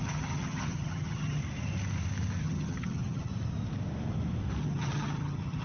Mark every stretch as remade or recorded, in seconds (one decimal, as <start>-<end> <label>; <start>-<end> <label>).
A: 0.0-1.4 remade; 1.4-2.4 recorded; 2.4-3.3 remade; 3.3-4.6 recorded; 4.6-5.6 remade